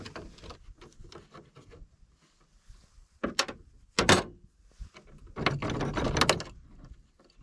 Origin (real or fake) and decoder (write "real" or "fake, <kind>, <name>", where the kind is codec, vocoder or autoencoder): real